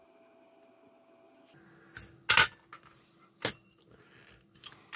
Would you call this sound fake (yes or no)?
no